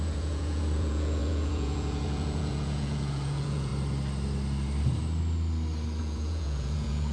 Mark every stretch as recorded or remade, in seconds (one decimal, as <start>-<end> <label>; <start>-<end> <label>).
0.0-3.7 remade; 3.7-6.0 recorded; 6.0-7.1 remade